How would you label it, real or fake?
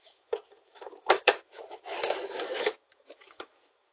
fake